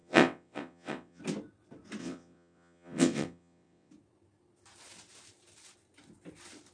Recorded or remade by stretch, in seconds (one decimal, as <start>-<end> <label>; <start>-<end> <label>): 0.0-1.2 remade; 1.2-2.0 recorded; 2.0-3.9 remade; 3.9-6.7 recorded